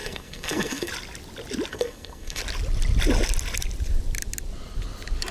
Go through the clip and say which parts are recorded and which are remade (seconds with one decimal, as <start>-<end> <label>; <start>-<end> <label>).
0.0-0.9 remade; 0.9-1.7 recorded; 1.7-2.4 remade; 2.4-5.3 recorded